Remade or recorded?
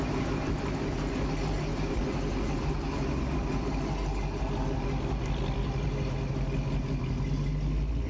recorded